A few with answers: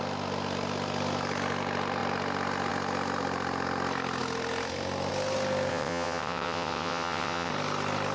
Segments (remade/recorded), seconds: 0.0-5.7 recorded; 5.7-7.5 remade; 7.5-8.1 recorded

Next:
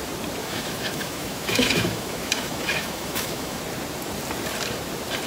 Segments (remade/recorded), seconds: 0.0-0.4 recorded; 0.4-3.6 remade; 3.6-5.3 recorded

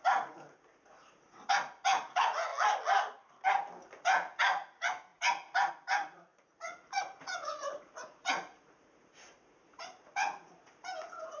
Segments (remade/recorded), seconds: 0.0-2.5 remade; 2.5-3.8 recorded; 3.8-11.4 remade